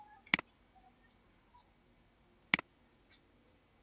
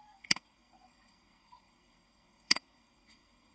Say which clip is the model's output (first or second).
second